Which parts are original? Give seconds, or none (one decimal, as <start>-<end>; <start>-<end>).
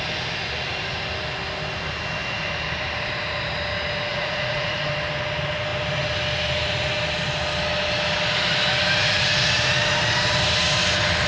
0.0-4.1; 4.9-11.3